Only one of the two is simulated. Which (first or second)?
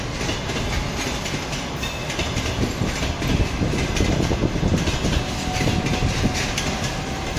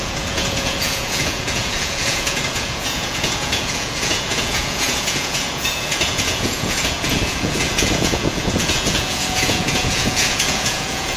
second